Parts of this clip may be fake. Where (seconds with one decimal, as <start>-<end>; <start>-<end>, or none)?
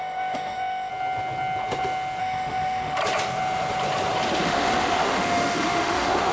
0.0-0.9; 2.2-3.0; 4.4-6.3